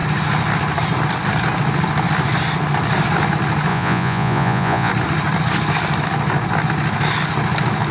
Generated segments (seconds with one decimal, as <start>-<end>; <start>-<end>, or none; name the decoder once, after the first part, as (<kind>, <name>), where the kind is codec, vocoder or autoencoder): 3.7-4.9 (vocoder, Vocos)